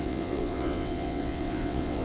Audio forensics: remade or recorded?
remade